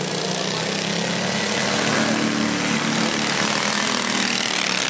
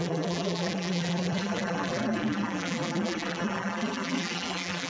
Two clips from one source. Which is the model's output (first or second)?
second